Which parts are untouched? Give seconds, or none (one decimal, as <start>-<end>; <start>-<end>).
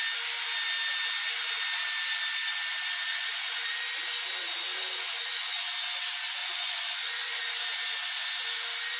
0.0-3.1; 3.7-4.7; 5.6-6.4; 7.5-9.0